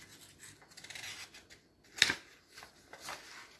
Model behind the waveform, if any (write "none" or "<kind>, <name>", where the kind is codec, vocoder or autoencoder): none